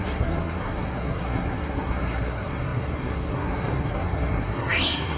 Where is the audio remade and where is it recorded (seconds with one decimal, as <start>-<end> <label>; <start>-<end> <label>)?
0.0-5.2 remade